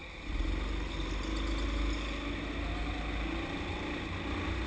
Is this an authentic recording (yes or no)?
yes